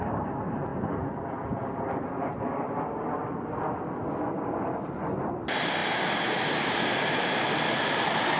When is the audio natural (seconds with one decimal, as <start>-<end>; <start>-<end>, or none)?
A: 0.0-8.4